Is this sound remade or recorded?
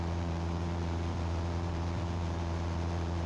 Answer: remade